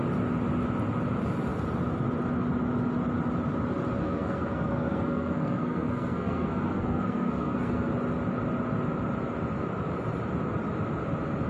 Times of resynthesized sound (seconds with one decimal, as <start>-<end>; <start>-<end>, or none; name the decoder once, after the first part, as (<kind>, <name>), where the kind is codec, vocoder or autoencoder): 4.0-7.9 (codec, SNAC)